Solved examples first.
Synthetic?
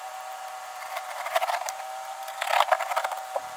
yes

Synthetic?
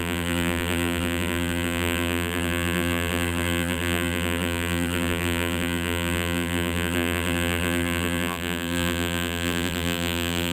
yes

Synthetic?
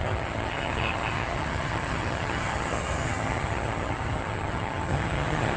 yes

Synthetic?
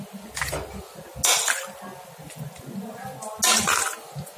no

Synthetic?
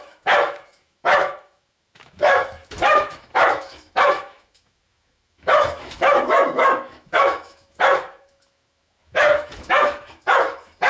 yes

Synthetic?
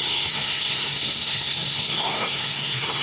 yes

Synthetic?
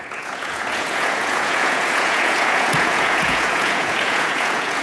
yes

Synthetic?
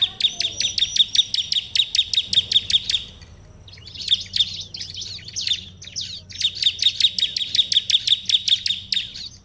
no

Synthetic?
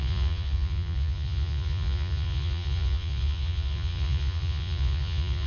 yes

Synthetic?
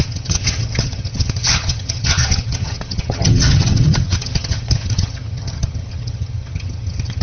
yes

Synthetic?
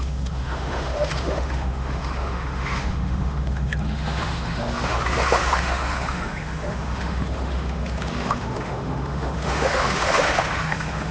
yes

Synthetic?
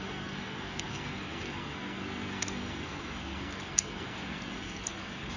yes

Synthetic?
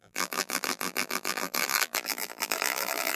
yes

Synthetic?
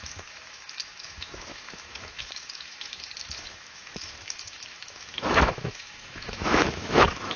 yes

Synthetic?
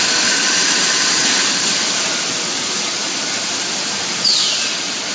yes